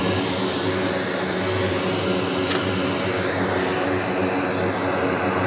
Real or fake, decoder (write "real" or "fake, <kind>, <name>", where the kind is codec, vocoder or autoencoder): real